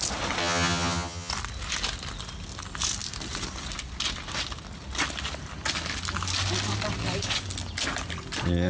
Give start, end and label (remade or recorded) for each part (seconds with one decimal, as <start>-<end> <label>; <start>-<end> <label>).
0.0-0.4 recorded; 0.4-1.3 remade; 1.3-8.7 recorded